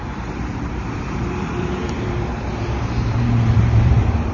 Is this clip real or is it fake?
fake